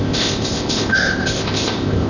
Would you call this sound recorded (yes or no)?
no